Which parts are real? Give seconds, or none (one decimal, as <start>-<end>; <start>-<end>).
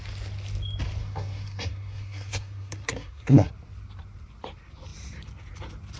0.0-1.0; 3.5-6.0